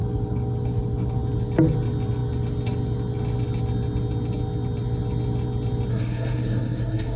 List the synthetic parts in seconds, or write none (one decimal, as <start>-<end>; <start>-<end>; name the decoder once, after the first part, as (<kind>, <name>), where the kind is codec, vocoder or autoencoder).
5.9-7.2 (codec, SNAC)